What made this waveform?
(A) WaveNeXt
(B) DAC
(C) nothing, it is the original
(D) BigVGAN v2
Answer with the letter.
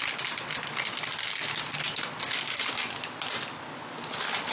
C